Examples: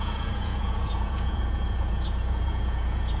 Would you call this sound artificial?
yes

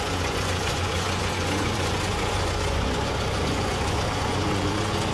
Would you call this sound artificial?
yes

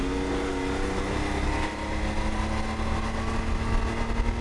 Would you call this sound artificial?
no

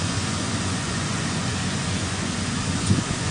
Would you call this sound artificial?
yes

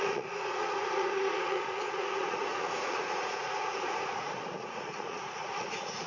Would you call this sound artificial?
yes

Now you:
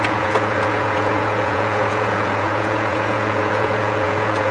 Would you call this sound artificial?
yes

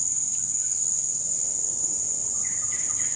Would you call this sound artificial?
no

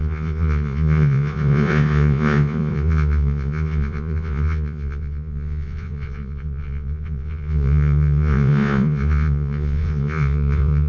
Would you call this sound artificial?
yes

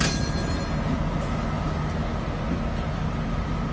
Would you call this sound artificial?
no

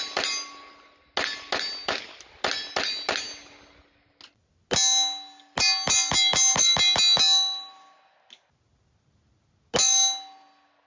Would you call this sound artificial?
no